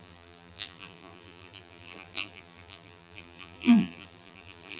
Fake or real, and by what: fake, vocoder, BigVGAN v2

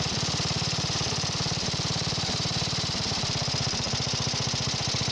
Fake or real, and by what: fake, vocoder, BigVGAN v2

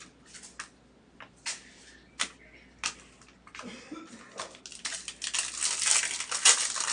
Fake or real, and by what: real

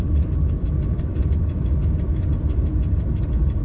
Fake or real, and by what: fake, vocoder, BigVGAN v2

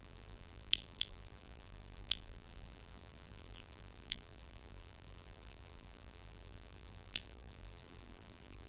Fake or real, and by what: fake, vocoder, BigVGAN v2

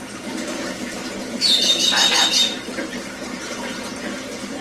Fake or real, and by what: fake, vocoder, BigVGAN v2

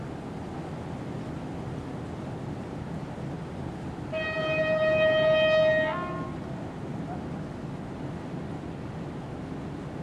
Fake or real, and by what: real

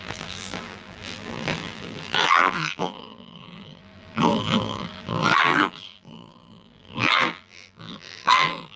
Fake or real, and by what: fake, vocoder, BigVGAN v2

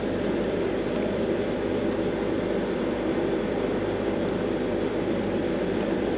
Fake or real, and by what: fake, vocoder, BigVGAN v2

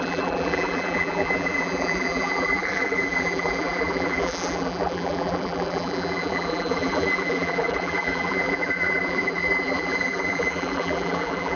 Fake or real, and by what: fake, vocoder, BigVGAN v2